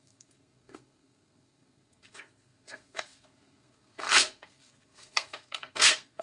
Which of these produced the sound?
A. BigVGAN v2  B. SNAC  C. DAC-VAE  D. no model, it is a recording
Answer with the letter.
B